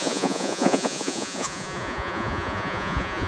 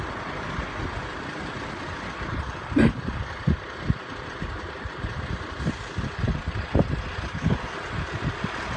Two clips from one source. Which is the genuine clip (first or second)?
second